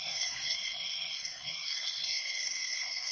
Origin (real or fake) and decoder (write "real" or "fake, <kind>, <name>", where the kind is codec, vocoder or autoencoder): fake, codec, SNAC